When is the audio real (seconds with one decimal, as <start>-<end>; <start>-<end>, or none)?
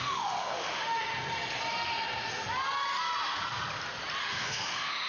1.1-4.2